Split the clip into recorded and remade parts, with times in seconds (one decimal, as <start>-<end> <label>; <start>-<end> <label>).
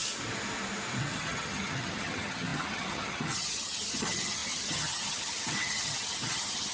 0.0-1.0 recorded; 1.0-6.7 remade